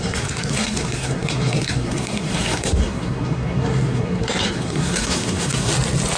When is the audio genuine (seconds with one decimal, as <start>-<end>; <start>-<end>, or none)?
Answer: 5.7-6.2